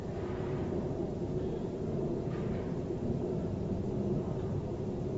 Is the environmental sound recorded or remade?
remade